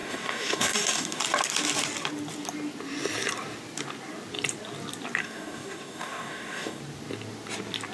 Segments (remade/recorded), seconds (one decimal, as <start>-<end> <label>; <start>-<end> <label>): 0.0-1.2 remade; 1.2-5.2 recorded; 5.2-6.8 remade; 6.8-7.9 recorded